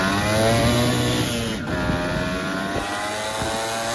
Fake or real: real